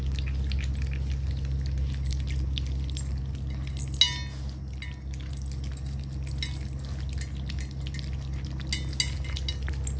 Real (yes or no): yes